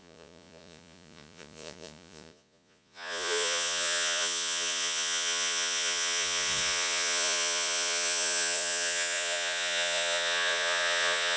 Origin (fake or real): fake